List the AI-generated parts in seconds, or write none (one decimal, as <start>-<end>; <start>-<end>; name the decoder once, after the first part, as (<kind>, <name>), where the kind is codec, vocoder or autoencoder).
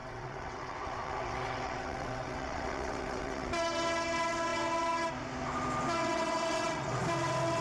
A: 0.0-3.5 (vocoder, WaveNeXt); 6.0-7.0